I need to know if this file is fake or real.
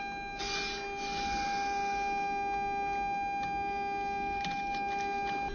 real